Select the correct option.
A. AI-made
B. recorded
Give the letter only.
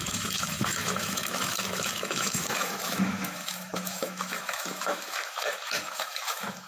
A